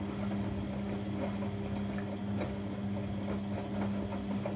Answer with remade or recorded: recorded